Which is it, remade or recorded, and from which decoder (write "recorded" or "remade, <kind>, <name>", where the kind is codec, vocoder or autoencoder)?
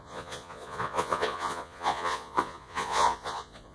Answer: remade, vocoder, Vocos